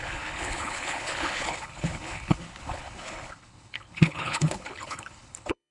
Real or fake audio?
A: fake